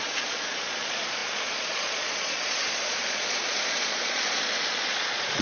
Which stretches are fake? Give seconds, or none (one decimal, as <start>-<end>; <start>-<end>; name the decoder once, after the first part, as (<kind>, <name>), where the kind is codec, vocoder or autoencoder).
0.0-5.4 (vocoder, Vocos)